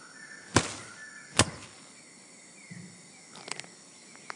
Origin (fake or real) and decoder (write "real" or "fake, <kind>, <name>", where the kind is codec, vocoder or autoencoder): real